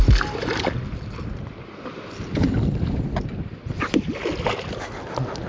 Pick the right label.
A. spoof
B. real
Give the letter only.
B